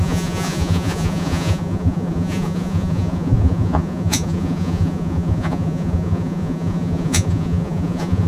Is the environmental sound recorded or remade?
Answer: remade